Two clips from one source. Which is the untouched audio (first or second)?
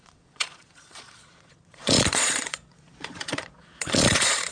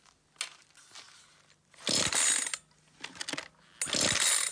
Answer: second